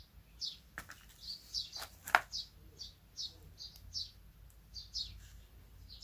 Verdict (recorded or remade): recorded